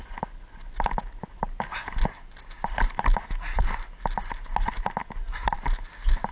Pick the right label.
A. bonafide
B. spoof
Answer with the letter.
A